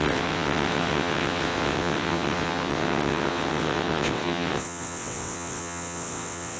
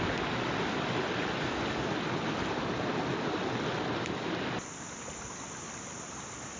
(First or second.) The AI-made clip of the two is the first